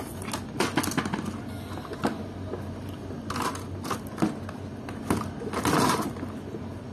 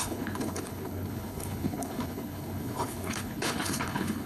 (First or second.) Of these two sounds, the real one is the first